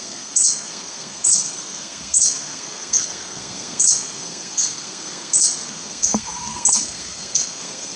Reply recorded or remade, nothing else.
remade